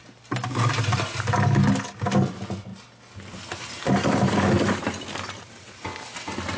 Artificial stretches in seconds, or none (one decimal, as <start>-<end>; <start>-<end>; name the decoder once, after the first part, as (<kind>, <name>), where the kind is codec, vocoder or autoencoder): none